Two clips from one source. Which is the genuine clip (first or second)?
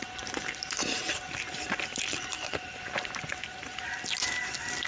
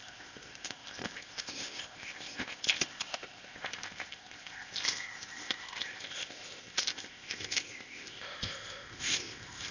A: first